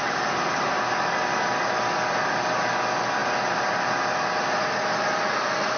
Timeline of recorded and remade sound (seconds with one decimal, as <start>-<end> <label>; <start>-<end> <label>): 0.0-5.8 recorded